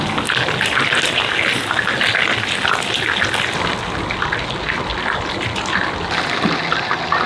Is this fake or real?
real